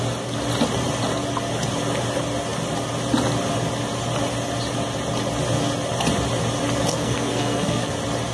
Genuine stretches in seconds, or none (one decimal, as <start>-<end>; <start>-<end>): 0.0-6.9; 7.9-8.3